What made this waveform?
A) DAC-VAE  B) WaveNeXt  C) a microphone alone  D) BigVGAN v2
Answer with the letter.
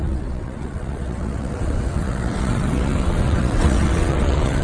B